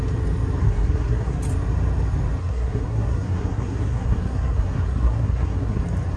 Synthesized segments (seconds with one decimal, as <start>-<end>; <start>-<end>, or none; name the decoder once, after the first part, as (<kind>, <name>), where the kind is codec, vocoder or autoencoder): 0.6-1.4 (codec, SNAC); 2.4-5.8